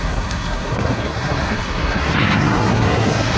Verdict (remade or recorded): remade